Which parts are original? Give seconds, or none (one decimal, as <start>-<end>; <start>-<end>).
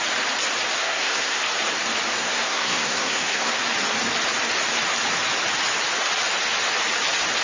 0.0-0.8; 1.4-2.2; 3.6-7.4